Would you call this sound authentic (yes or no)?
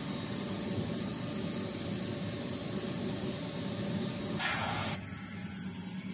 yes